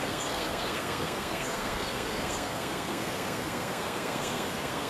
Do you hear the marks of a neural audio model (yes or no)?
yes